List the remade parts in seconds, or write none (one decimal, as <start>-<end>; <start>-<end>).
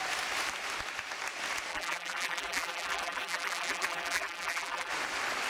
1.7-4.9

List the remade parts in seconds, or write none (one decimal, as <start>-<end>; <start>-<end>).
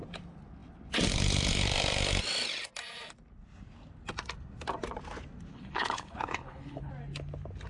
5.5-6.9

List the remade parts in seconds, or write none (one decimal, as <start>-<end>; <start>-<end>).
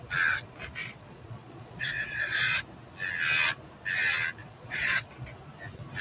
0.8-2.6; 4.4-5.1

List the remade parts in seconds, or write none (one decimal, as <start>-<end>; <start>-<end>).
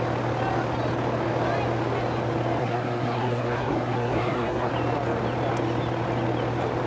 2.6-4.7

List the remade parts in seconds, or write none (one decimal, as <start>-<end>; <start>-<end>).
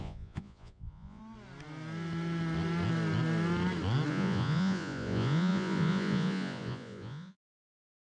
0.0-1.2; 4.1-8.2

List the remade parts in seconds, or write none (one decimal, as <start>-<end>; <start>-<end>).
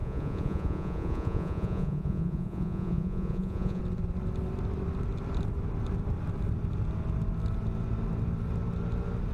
0.0-3.8